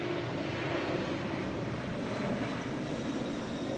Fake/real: real